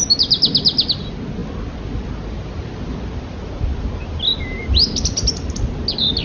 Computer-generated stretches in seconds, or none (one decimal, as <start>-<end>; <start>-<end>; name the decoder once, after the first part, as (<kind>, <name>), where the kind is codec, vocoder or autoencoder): none